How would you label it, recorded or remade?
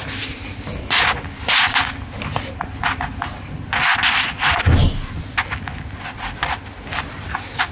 recorded